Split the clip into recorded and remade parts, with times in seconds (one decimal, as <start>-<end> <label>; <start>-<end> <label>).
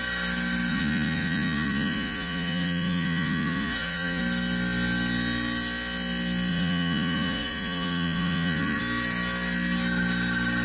0.0-0.7 recorded; 0.7-4.2 remade; 4.2-6.5 recorded; 6.5-8.8 remade; 8.8-10.6 recorded